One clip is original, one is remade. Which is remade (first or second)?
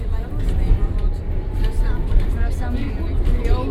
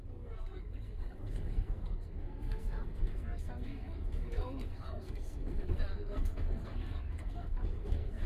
second